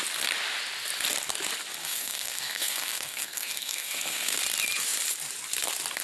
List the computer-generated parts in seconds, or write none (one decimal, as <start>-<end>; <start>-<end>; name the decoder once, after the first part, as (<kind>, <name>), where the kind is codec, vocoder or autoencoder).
1.8-4.4 (codec, SNAC)